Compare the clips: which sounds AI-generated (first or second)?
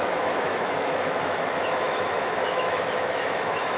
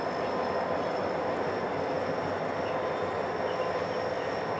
first